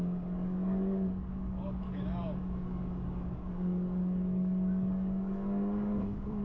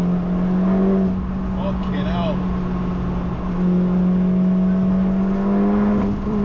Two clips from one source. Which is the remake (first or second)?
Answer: first